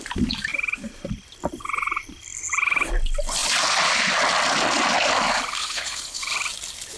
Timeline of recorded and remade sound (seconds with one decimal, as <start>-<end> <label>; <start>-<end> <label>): 0.0-5.6 recorded; 5.6-6.2 remade; 6.2-7.0 recorded